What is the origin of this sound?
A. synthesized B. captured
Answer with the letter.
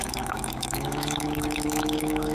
A